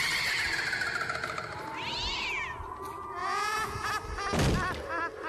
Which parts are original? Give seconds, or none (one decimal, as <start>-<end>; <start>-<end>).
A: 0.0-3.2; 3.9-5.3